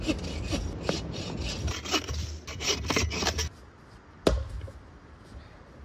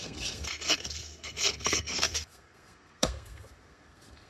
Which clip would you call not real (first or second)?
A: second